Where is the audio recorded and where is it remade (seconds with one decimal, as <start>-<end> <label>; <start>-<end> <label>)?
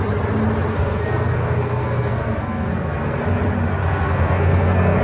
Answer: 0.0-0.7 recorded; 0.7-3.2 remade; 3.2-3.8 recorded; 3.8-5.0 remade